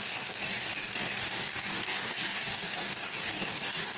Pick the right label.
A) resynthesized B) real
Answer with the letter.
A